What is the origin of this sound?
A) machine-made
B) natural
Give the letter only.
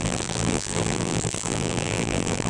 A